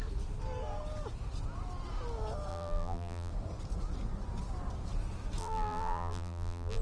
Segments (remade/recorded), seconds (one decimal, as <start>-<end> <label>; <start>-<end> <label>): 0.0-2.5 recorded; 2.5-3.3 remade; 3.3-5.4 recorded; 5.4-6.8 remade